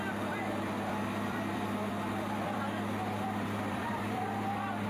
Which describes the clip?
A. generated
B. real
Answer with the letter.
A